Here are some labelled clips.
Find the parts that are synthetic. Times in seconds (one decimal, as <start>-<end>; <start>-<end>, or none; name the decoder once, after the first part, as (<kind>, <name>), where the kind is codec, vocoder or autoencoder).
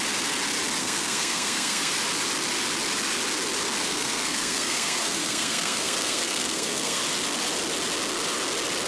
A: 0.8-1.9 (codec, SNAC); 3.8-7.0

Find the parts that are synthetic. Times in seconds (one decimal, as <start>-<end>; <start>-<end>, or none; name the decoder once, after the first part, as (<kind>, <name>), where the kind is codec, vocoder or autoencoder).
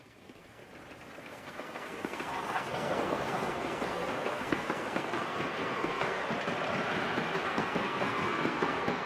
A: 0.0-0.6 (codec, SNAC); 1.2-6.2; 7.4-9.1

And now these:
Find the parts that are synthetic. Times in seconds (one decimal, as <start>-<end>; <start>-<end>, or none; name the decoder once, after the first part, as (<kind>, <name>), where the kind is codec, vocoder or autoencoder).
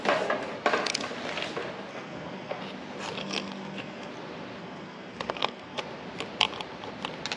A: 1.9-2.6 (codec, SNAC); 3.2-4.1; 4.6-5.8